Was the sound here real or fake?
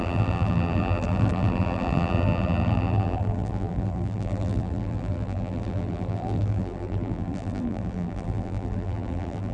fake